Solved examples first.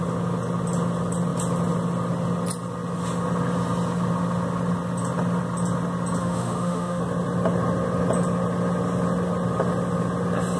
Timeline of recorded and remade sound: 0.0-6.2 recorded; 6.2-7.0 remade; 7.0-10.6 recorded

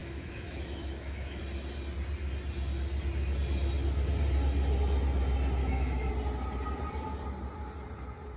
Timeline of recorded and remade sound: 0.0-1.4 remade; 1.4-5.6 recorded; 5.6-6.1 remade; 6.1-8.4 recorded

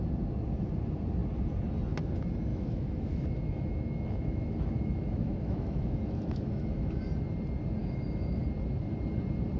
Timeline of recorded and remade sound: 0.0-2.5 recorded; 2.5-6.9 remade; 6.9-7.8 recorded; 7.8-8.4 remade; 8.4-9.6 recorded

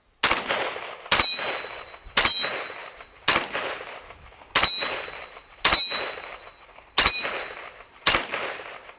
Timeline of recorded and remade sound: 0.0-9.0 recorded

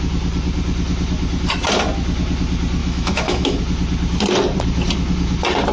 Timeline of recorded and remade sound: 0.0-2.8 recorded; 2.8-3.6 remade; 3.6-5.7 recorded

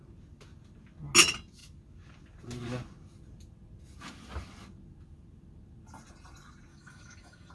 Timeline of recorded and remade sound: 0.0-6.7 recorded; 6.7-7.5 remade

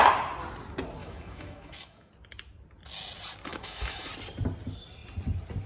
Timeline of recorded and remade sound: 0.0-1.0 recorded; 1.0-2.1 remade; 2.1-3.5 recorded; 3.5-4.1 remade; 4.1-5.7 recorded

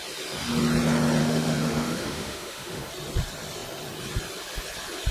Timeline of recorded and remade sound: 0.0-1.2 recorded; 1.2-2.9 remade; 2.9-5.1 recorded